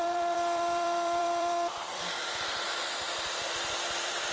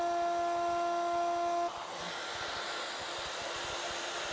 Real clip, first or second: second